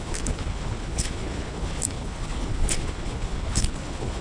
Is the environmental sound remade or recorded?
remade